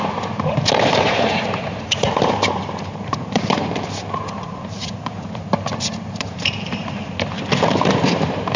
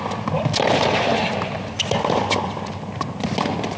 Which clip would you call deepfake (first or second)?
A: first